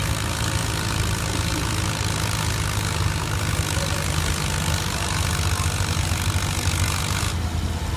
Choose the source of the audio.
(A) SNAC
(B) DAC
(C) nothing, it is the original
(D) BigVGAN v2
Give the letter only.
C